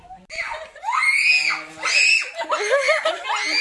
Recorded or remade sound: recorded